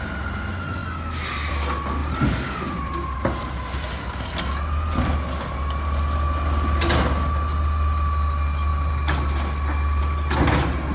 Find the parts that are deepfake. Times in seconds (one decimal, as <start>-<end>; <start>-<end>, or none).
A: 2.0-4.4